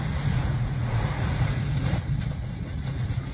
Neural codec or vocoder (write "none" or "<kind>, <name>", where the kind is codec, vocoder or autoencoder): vocoder, Vocos